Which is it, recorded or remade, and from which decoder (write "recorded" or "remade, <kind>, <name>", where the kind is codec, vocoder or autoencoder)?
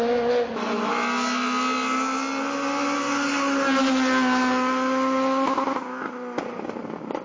recorded